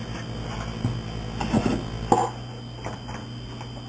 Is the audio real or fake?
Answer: real